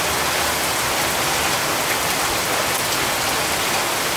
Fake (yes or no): no